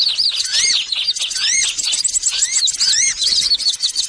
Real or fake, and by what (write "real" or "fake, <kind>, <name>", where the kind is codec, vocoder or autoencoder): real